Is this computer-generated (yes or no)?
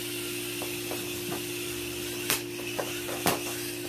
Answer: yes